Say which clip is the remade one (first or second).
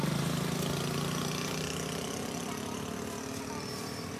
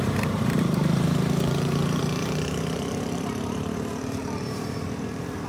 second